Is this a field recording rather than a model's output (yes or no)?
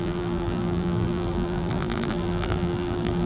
no